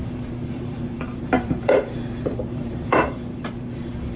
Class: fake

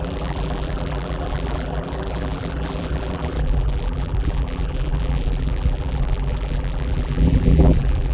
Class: fake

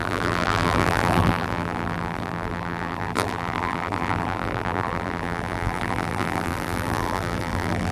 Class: fake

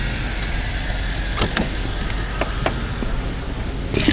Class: real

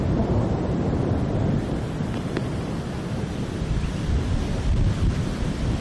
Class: fake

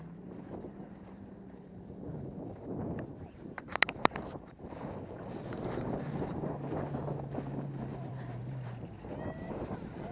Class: fake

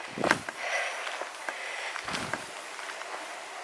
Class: real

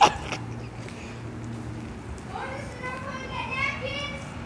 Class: real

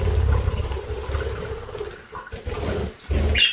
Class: real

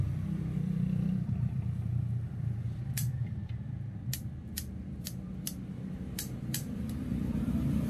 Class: fake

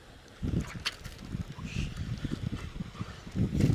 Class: real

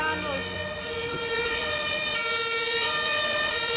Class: fake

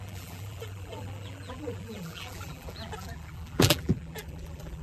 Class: fake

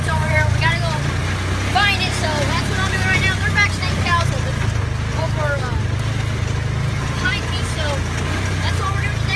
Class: real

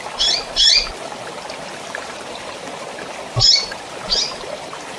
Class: real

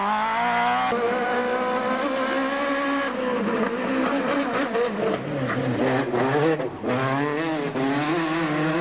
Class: real